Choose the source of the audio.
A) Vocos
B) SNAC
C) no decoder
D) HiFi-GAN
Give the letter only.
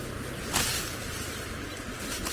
C